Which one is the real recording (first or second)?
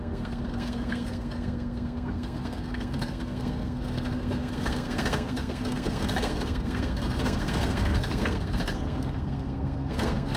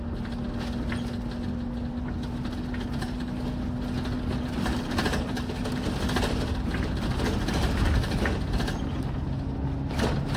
second